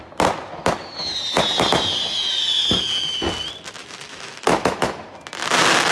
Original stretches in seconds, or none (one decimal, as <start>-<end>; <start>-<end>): 0.0-3.8; 5.1-5.9